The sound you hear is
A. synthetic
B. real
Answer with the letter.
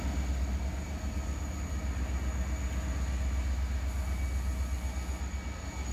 B